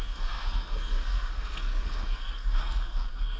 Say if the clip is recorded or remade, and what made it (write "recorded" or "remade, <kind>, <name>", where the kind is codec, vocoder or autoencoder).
remade, codec, SNAC